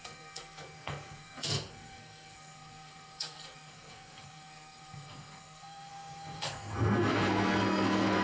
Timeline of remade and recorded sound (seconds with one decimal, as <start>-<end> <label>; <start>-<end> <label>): 0.0-8.2 remade